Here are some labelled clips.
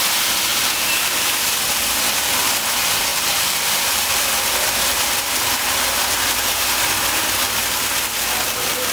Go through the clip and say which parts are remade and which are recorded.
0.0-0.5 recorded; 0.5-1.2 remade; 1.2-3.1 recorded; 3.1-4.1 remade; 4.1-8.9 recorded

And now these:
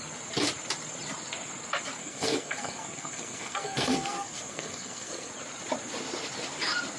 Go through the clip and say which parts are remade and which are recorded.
0.0-2.0 recorded; 2.0-5.3 remade; 5.3-7.0 recorded

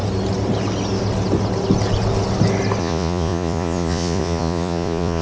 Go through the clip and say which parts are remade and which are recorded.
0.0-2.8 recorded; 2.8-5.2 remade

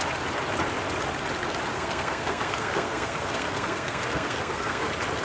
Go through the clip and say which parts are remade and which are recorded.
0.0-1.7 recorded; 1.7-4.8 remade; 4.8-5.2 recorded

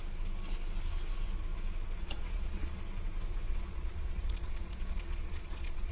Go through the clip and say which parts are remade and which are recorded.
0.0-2.0 recorded; 2.0-2.8 remade; 2.8-3.5 recorded; 3.5-5.9 remade

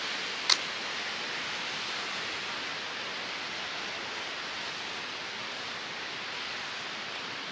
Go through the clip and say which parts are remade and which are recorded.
0.0-7.5 recorded

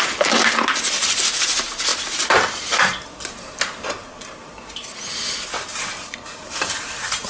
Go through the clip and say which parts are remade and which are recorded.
0.0-7.3 recorded

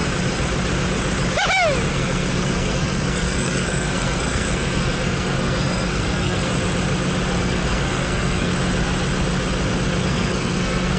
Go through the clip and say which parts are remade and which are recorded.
0.0-1.9 recorded; 1.9-6.5 remade; 6.5-7.4 recorded; 7.4-8.5 remade; 8.5-10.0 recorded; 10.0-11.0 remade